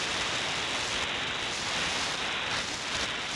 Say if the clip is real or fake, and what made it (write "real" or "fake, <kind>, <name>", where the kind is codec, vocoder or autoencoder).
real